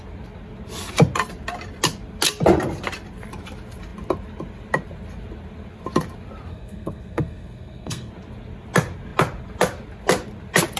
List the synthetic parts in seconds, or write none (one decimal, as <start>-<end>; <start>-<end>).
6.5-8.1